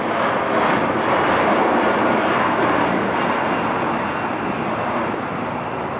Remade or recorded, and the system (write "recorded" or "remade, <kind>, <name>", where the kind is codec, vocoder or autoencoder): recorded